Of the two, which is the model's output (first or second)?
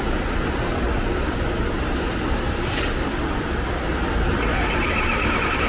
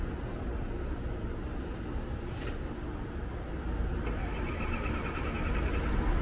first